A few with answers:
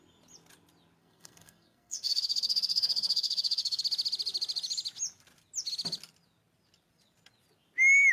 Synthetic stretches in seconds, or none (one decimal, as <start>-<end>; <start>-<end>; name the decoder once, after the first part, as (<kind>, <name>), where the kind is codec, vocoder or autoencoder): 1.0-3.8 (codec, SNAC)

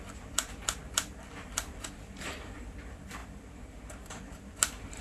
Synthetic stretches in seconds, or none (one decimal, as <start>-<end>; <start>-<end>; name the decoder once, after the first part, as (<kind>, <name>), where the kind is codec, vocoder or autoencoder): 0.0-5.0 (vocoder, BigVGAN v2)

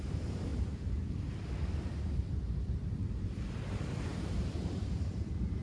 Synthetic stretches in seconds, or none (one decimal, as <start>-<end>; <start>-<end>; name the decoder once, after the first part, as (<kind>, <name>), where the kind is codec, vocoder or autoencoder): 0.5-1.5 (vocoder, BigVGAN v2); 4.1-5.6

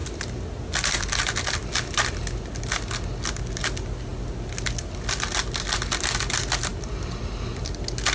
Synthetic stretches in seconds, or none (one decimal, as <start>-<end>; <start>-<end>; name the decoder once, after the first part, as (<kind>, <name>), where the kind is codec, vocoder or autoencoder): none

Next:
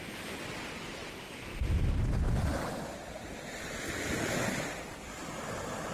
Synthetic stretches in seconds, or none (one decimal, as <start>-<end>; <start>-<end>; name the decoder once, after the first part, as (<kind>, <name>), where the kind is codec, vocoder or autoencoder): 1.5-5.0 (vocoder, BigVGAN v2)